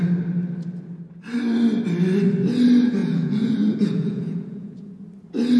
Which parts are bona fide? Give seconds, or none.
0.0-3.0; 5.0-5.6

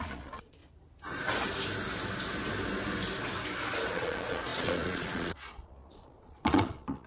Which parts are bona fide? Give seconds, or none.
0.6-3.9

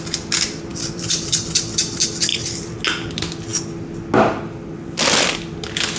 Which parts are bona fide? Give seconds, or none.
0.0-0.7; 1.3-2.3; 2.8-6.0

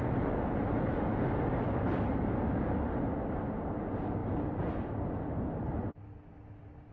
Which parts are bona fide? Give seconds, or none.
0.0-6.9

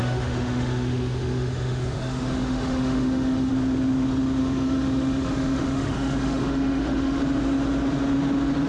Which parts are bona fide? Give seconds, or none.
3.5-4.4; 7.2-8.7